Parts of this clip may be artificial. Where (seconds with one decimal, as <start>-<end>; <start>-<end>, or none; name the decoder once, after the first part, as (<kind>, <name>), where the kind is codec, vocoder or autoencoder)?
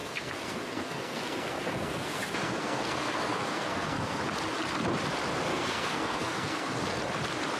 0.0-4.2 (codec, SNAC); 5.5-7.0